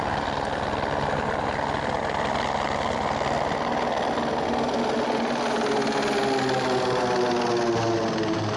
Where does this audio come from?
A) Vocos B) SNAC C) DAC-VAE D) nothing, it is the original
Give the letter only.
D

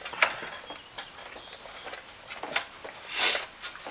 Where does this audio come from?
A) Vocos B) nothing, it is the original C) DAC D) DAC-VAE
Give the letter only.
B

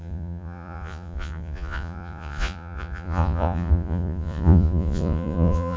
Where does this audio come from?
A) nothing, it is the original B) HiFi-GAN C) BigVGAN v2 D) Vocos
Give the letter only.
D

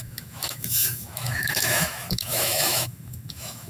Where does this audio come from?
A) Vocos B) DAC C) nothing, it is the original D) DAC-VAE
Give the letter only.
D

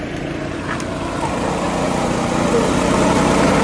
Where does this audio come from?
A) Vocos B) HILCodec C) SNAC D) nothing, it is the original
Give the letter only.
D